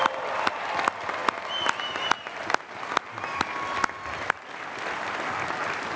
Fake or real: real